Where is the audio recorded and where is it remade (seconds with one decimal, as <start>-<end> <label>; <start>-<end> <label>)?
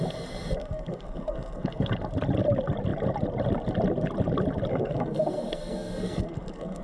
0.0-0.6 recorded; 0.6-1.9 remade; 1.9-4.7 recorded; 4.7-6.8 remade